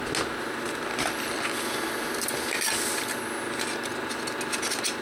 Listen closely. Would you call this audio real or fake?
real